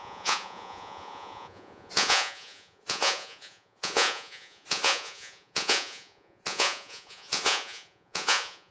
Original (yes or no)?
no